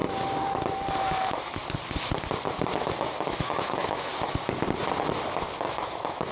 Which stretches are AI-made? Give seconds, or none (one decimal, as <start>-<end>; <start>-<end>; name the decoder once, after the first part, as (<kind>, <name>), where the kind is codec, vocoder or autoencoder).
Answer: 0.9-1.6 (autoencoder, DAC-VAE); 3.2-4.1; 5.6-6.3